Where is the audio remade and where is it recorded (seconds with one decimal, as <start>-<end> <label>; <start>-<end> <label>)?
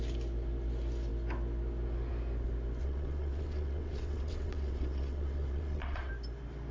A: 0.0-2.8 recorded; 2.8-6.1 remade; 6.1-6.7 recorded